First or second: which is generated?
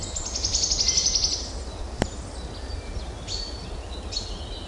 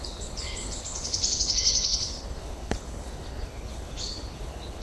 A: second